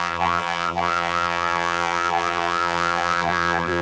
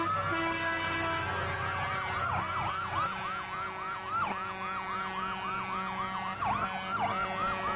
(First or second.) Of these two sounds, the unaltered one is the second